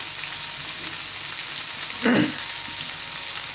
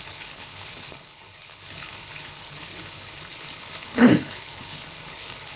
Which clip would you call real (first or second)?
first